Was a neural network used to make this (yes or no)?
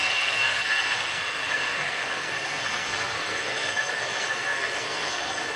yes